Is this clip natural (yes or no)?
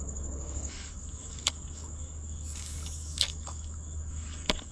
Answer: no